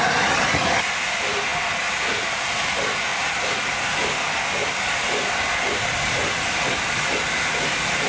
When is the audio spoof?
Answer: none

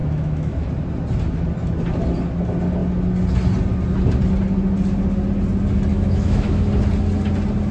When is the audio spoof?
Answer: 0.0-0.7 (autoencoder, DAC-VAE); 5.9-6.7

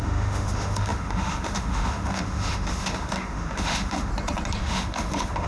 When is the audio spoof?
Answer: 0.0-4.1 (autoencoder, DAC-VAE); 4.6-5.5

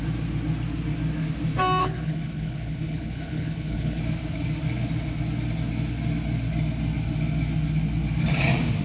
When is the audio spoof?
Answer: 1.8-4.0 (codec, HILCodec)

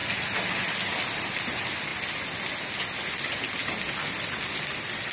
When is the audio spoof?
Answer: none